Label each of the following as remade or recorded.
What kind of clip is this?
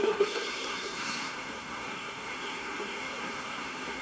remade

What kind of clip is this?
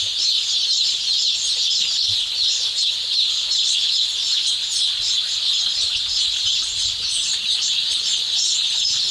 recorded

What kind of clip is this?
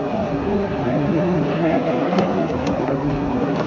remade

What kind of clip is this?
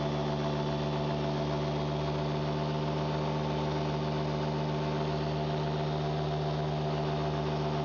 recorded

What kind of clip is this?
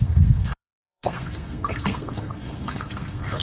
remade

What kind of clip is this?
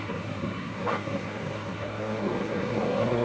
remade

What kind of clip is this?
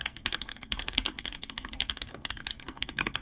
remade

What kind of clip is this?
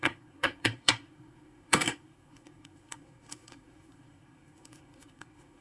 remade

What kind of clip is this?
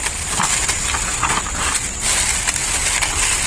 recorded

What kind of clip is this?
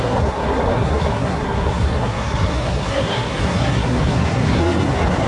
remade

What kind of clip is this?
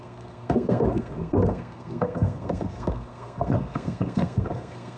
remade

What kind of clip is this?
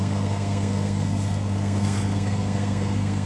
remade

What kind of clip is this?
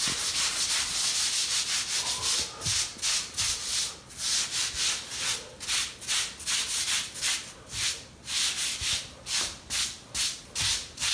recorded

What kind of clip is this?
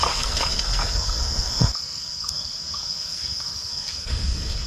remade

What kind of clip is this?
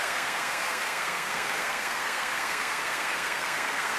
remade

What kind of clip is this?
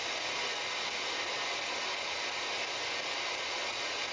recorded